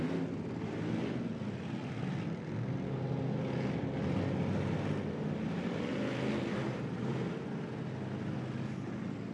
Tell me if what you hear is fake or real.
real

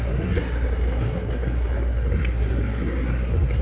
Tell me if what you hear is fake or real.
fake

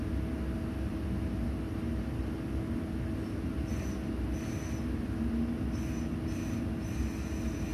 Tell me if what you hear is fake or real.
real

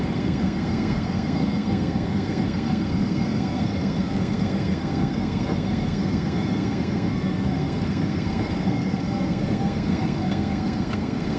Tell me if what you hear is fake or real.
fake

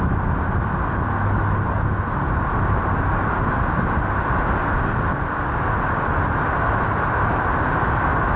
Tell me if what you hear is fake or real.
real